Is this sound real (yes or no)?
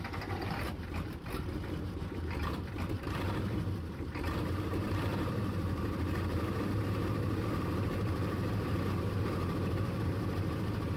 no